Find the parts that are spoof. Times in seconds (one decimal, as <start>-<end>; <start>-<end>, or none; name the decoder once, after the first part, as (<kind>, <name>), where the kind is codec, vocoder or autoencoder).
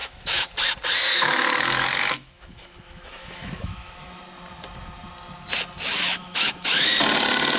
0.0-0.5 (autoencoder, DAC-VAE); 1.1-4.2; 5.9-6.9